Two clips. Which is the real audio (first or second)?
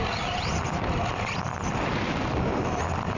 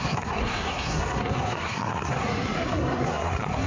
first